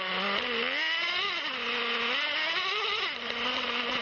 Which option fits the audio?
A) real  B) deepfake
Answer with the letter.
A